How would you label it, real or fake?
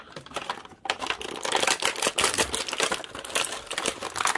real